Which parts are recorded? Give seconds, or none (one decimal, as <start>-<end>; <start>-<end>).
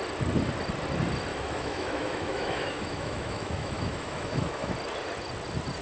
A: 0.0-1.3; 4.7-5.8